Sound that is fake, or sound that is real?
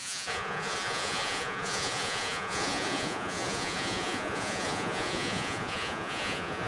fake